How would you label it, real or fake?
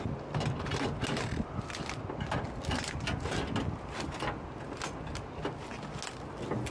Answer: real